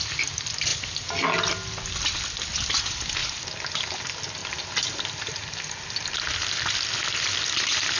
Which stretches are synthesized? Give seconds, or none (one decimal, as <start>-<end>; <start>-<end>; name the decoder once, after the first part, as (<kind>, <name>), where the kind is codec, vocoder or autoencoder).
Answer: none